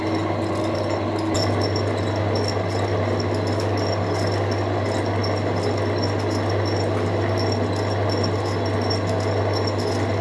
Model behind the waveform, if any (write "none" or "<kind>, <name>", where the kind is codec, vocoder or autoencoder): none